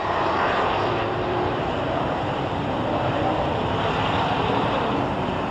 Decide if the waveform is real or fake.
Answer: fake